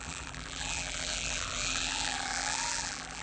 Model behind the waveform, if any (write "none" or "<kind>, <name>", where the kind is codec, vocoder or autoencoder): vocoder, BigVGAN v2